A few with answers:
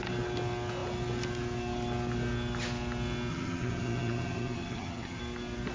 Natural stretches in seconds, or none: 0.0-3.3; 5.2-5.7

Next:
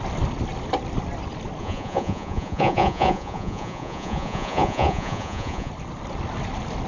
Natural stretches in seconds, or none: 0.0-1.6; 5.7-6.9

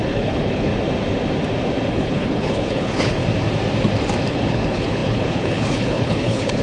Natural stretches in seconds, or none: 0.7-1.9; 3.2-4.3

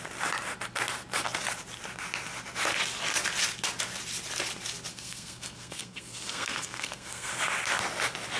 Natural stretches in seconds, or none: 0.0-4.9; 7.3-8.4